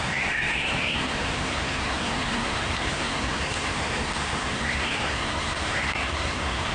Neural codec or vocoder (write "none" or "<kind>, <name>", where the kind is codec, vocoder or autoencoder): codec, SNAC